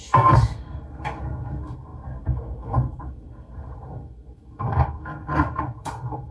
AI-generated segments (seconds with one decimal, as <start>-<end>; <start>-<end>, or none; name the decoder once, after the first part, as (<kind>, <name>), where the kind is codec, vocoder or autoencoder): 0.0-6.3 (codec, SNAC)